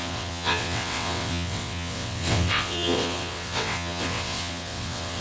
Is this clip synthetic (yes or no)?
yes